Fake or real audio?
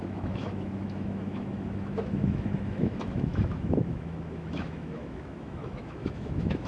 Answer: fake